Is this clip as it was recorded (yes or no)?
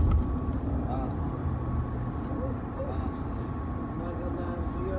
yes